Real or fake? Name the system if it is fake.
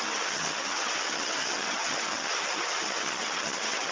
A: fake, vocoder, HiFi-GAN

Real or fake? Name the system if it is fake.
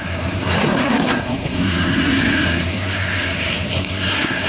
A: fake, codec, SNAC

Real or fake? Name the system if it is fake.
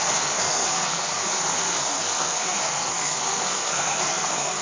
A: fake, codec, SNAC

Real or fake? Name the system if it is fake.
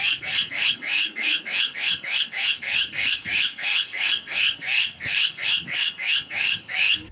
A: fake, codec, SNAC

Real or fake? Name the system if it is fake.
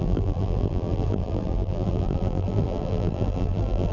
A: fake, vocoder, BigVGAN v2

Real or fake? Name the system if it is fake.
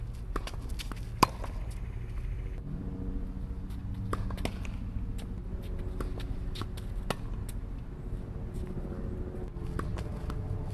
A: real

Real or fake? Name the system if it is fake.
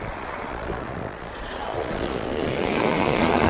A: fake, vocoder, Vocos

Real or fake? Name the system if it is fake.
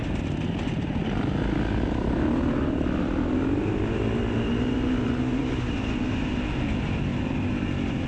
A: real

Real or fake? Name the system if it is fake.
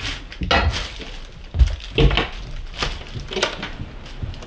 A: real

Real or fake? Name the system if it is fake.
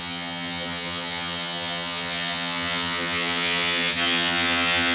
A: fake, vocoder, HiFi-GAN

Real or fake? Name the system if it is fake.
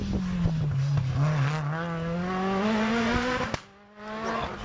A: real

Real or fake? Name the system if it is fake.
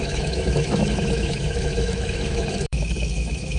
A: fake, autoencoder, DAC-VAE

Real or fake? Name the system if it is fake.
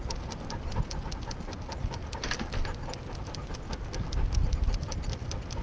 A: real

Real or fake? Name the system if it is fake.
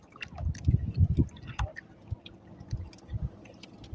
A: real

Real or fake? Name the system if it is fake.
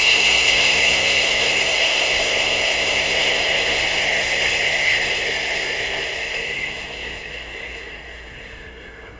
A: fake, codec, SNAC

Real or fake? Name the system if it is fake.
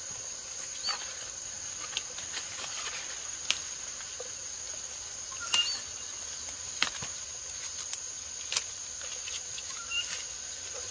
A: real